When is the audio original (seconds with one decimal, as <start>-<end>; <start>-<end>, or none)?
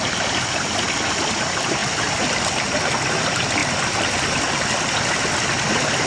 0.0-6.1